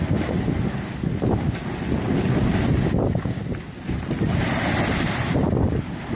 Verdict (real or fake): real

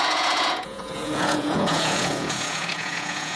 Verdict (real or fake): fake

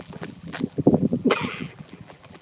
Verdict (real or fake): fake